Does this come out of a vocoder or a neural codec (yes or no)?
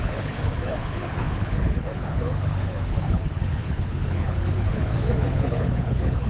yes